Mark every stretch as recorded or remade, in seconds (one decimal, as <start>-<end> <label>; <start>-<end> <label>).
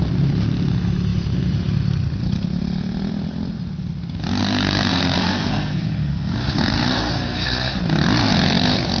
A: 0.0-4.4 recorded; 4.4-7.8 remade; 7.8-9.0 recorded